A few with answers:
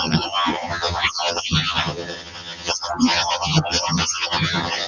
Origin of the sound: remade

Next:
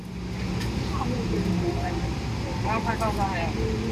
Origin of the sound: recorded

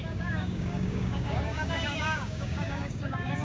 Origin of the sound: remade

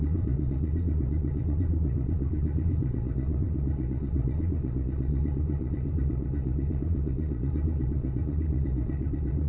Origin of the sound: remade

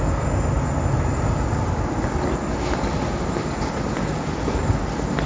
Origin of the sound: recorded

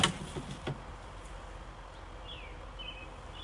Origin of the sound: recorded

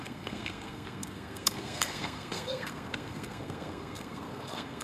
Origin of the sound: remade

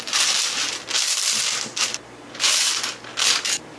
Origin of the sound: recorded